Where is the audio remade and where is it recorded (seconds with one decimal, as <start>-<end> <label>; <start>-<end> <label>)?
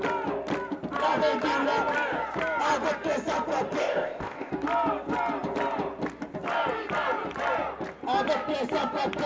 0.0-3.8 recorded; 3.8-4.5 remade; 4.5-9.3 recorded